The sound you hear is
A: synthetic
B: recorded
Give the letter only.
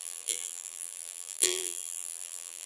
A